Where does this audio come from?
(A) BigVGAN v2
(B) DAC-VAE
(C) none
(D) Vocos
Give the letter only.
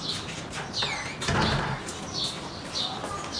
C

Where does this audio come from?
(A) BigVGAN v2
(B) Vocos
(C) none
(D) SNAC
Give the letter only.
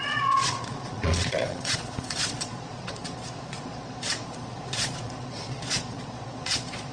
B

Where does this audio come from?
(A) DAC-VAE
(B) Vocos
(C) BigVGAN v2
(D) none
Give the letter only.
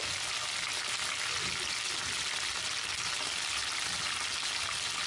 D